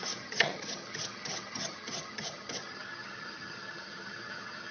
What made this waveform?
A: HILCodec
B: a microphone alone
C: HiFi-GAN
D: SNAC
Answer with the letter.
C